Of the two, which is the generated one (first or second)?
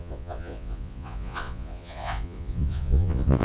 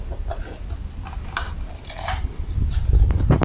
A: first